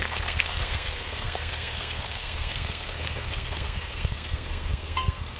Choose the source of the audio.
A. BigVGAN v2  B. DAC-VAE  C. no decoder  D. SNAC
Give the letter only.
D